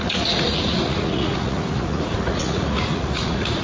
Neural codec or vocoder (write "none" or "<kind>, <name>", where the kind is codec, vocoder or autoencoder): vocoder, Vocos